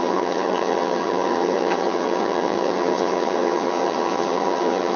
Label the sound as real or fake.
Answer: fake